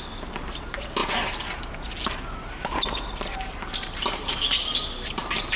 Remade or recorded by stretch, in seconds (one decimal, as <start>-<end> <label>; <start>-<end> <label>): 0.0-5.6 recorded